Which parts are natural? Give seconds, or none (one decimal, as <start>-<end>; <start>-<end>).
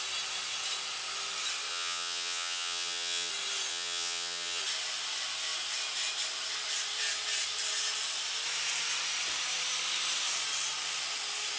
0.0-1.7; 3.3-3.7; 4.6-11.6